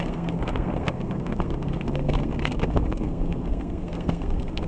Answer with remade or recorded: remade